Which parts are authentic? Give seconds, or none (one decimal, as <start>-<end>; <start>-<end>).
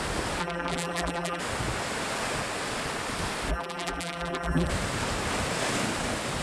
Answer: 0.0-0.4; 1.4-3.5; 4.7-6.4